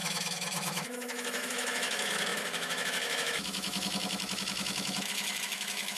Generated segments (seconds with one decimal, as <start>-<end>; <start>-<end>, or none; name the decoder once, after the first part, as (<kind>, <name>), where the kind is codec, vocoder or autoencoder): 0.0-6.0 (autoencoder, DAC-VAE)